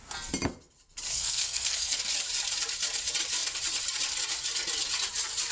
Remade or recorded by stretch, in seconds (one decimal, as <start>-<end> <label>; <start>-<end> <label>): 0.0-1.1 recorded; 1.1-2.0 remade; 2.0-5.5 recorded